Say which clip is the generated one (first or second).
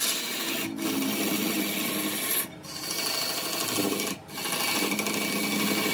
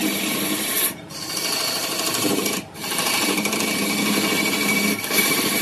second